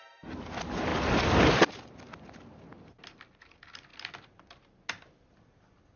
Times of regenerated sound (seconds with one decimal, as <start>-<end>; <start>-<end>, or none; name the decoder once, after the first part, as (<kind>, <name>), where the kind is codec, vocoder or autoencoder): none